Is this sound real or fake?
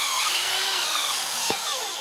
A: fake